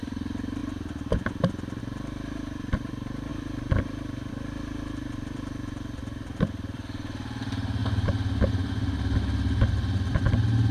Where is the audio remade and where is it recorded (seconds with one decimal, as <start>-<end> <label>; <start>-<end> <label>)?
0.0-0.6 remade; 0.6-1.8 recorded; 1.8-7.8 remade; 7.8-9.7 recorded; 9.7-10.7 remade